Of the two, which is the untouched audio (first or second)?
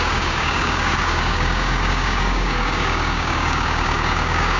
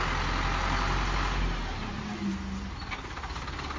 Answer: second